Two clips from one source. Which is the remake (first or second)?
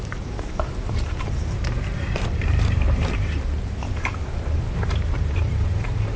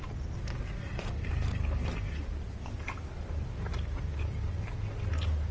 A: first